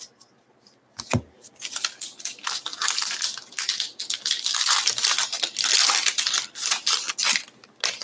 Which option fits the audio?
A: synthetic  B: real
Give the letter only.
B